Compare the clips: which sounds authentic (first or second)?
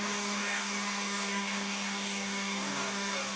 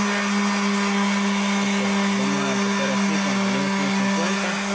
second